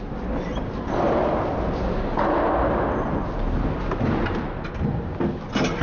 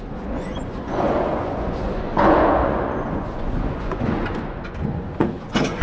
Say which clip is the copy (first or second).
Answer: second